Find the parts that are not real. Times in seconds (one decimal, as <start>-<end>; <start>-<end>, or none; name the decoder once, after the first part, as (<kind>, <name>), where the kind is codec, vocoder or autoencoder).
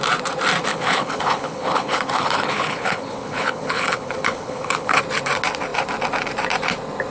0.7-5.0 (codec, HILCodec)